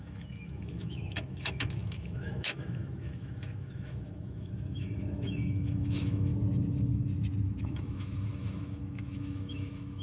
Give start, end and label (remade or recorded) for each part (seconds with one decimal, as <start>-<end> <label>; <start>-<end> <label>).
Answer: 0.0-6.3 remade; 6.3-7.6 recorded; 7.6-10.0 remade